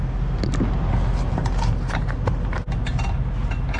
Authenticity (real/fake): real